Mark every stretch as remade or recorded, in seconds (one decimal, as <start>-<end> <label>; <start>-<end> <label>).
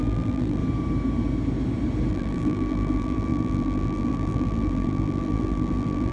0.0-0.6 remade; 0.6-2.1 recorded; 2.1-6.1 remade